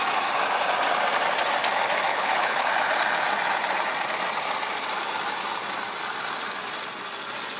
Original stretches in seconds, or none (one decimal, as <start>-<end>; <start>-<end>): 0.0-2.1; 2.7-7.6